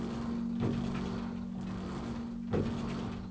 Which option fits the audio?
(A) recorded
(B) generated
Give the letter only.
A